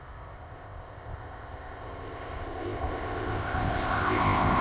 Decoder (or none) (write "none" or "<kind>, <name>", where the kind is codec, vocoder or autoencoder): codec, ZipCodec